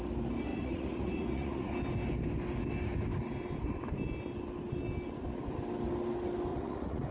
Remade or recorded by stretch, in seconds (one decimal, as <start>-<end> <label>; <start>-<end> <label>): 0.0-0.5 recorded; 0.5-1.7 remade; 1.7-6.5 recorded; 6.5-7.1 remade